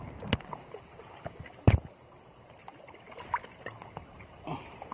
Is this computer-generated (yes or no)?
no